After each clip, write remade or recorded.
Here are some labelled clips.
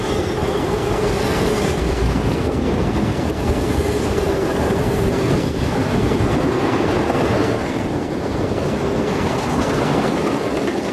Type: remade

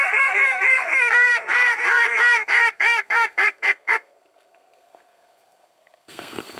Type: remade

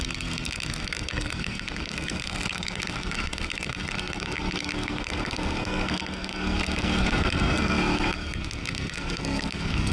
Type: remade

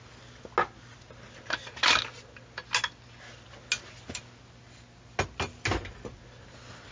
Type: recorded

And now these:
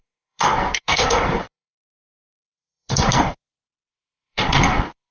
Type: remade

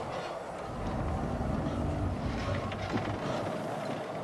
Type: recorded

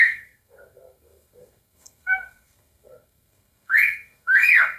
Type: remade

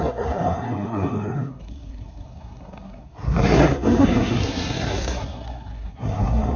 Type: remade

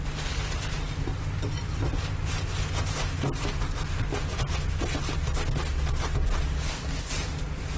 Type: recorded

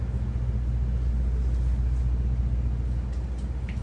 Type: recorded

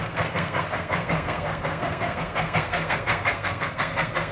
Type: remade